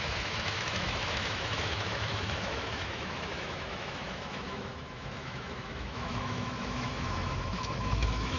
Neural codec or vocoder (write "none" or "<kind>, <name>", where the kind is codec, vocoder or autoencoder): autoencoder, DAC-VAE